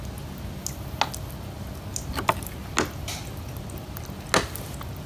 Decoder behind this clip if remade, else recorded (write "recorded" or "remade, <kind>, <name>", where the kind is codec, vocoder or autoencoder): recorded